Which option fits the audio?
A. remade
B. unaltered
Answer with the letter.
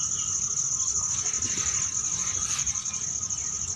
B